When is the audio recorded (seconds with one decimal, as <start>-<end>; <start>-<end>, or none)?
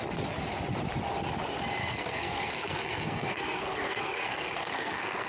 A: 0.0-1.8